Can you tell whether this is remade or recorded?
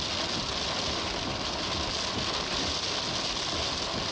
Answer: recorded